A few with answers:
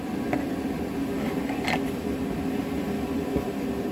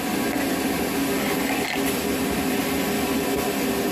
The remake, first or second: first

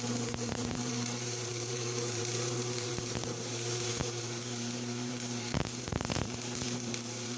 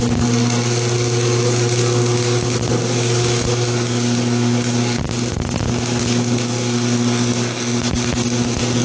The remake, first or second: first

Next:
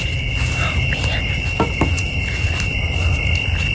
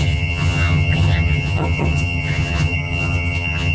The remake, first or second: second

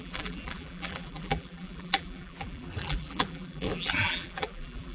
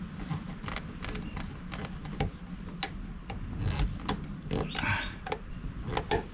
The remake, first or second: first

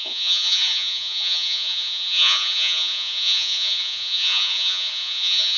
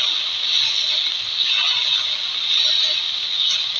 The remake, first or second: first